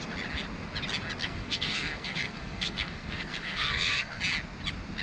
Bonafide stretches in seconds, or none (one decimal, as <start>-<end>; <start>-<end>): 0.0-1.2; 4.2-5.0